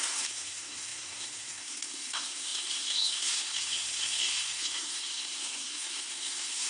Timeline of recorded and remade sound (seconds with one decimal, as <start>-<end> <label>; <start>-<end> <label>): 0.0-6.7 remade